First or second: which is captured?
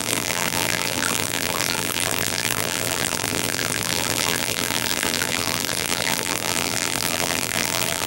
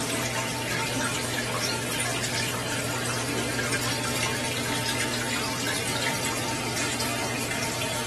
second